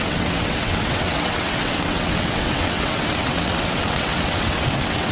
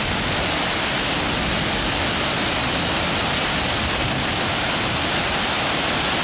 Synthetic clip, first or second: first